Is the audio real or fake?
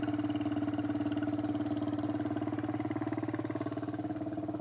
real